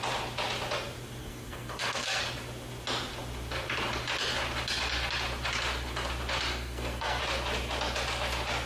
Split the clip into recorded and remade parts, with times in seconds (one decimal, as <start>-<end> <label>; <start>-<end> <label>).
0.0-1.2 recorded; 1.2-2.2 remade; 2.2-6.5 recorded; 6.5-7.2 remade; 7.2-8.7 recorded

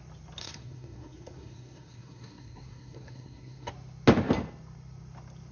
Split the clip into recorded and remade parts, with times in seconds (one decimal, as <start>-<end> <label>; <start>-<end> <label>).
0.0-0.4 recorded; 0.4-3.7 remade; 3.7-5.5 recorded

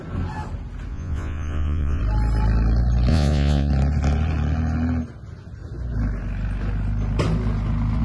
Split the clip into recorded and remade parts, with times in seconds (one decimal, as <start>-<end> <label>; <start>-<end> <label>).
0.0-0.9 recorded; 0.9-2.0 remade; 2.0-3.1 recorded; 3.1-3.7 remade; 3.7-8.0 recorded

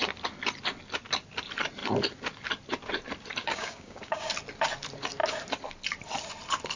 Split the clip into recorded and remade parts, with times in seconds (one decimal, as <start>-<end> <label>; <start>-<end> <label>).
0.0-3.4 recorded; 3.4-4.3 remade; 4.3-6.8 recorded

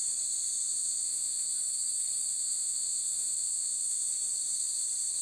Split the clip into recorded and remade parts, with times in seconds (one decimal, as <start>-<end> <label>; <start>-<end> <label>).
0.0-0.7 recorded; 0.7-1.5 remade; 1.5-2.3 recorded; 2.3-4.1 remade; 4.1-5.2 recorded

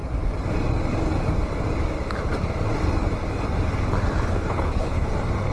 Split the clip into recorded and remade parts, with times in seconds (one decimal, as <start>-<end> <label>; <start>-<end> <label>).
0.0-4.3 recorded; 4.3-5.1 remade; 5.1-5.5 recorded

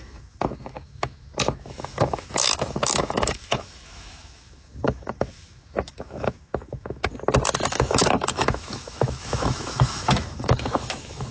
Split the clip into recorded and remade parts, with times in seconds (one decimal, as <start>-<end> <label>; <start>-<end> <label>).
0.0-7.1 remade; 7.1-7.7 recorded; 7.7-11.3 remade

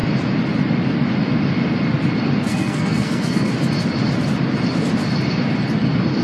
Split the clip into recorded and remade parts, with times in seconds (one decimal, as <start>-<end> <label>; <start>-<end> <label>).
0.0-2.5 recorded; 2.5-3.5 remade; 3.5-6.2 recorded